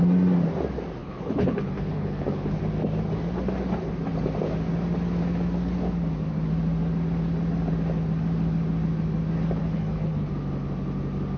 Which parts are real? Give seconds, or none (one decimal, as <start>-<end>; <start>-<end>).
0.0-1.0; 2.6-9.6; 10.3-11.4